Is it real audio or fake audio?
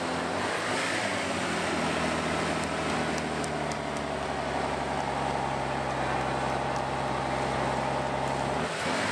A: real